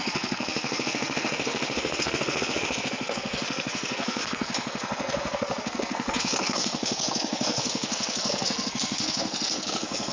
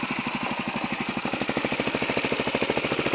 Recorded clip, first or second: second